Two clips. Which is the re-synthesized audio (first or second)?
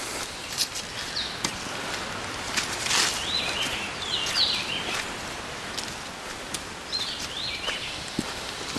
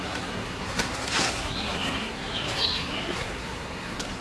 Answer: second